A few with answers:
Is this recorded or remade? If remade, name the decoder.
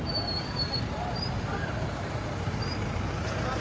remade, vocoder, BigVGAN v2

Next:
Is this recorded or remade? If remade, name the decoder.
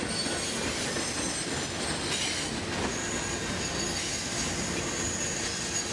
recorded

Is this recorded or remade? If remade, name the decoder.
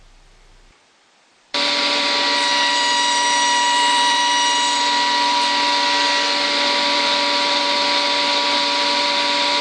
remade, vocoder, BigVGAN v2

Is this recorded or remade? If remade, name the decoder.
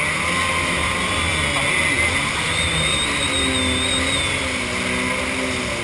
recorded